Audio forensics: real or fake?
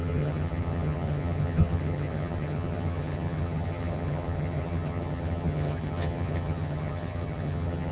fake